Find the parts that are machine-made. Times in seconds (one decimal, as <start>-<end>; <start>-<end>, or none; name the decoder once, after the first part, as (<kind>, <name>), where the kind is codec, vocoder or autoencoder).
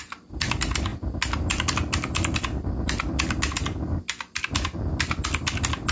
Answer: none